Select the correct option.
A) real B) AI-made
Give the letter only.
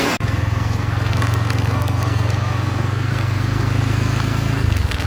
B